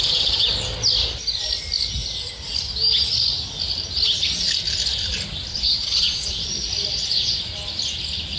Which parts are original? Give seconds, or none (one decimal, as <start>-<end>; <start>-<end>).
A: 0.0-5.5; 6.5-6.9; 7.4-8.4